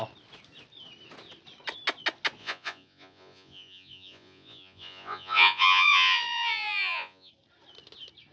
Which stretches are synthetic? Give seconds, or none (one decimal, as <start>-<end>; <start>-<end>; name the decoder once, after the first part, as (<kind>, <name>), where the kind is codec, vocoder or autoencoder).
2.4-7.3 (vocoder, Vocos)